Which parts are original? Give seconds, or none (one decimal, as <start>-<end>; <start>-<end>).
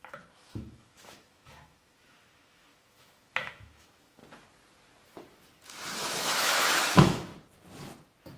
4.2-6.3; 7.3-8.4